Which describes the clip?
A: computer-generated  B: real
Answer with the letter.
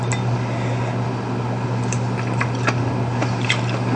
B